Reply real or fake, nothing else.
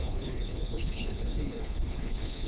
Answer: fake